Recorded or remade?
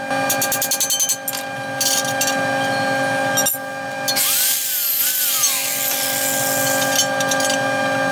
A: recorded